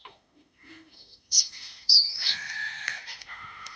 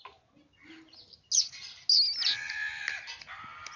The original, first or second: second